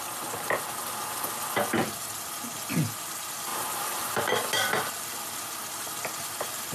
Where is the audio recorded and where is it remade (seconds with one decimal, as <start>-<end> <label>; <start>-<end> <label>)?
0.0-3.5 recorded; 3.5-4.2 remade; 4.2-6.7 recorded